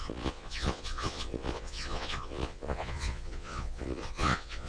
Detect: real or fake fake